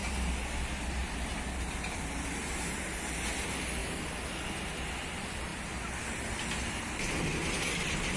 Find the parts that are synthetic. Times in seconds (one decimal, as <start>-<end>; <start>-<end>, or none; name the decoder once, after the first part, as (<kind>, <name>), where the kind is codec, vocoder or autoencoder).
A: none